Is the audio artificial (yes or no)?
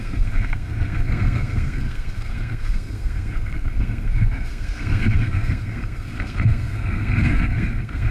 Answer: yes